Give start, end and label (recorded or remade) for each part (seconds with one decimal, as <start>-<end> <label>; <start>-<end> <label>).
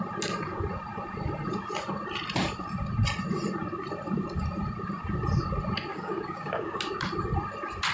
0.0-5.9 recorded; 5.9-6.8 remade; 6.8-7.9 recorded